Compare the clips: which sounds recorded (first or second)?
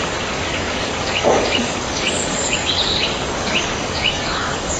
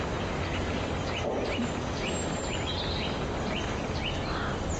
second